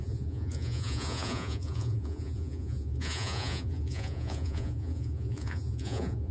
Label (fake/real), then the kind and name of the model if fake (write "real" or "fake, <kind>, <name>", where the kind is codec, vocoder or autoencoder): fake, vocoder, Vocos